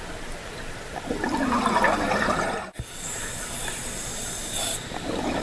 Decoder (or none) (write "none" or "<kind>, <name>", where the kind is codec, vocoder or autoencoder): none